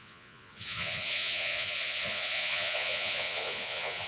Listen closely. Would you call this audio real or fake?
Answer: fake